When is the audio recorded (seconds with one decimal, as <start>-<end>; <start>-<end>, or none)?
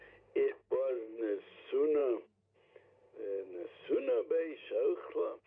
0.0-5.5